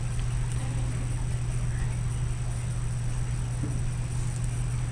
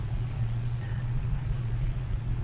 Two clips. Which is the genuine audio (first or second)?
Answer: first